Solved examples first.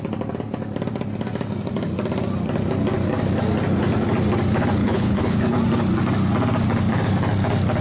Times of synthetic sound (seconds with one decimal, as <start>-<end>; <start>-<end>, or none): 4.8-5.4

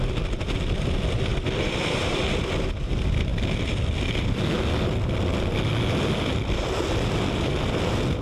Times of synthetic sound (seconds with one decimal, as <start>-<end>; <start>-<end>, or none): none

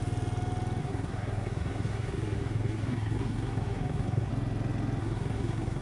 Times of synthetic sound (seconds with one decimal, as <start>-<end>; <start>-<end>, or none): 0.8-4.3; 5.0-5.8

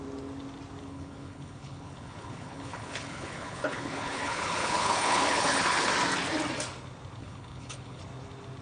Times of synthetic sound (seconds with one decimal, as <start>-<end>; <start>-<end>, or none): 0.8-5.9; 7.2-8.0

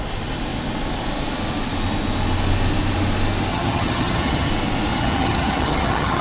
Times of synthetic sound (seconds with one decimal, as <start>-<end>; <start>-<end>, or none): 3.5-4.5; 4.9-6.2

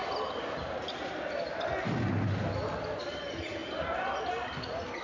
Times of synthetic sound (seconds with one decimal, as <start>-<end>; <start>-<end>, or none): none